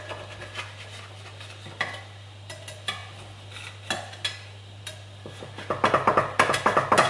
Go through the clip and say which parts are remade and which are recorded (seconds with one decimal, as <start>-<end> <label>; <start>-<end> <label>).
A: 0.0-7.1 recorded